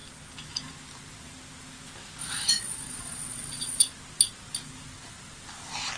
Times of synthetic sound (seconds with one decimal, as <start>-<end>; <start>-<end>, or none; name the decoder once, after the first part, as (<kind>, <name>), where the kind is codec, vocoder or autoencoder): 2.2-3.8 (vocoder, Vocos)